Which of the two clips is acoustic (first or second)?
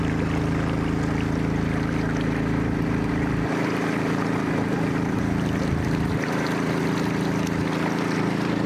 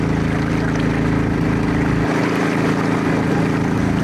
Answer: second